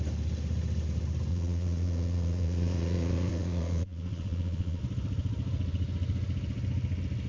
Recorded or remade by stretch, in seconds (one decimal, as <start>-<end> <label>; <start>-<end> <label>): 0.0-1.3 recorded; 1.3-4.8 remade; 4.8-7.3 recorded